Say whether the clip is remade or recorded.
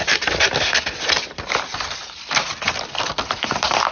remade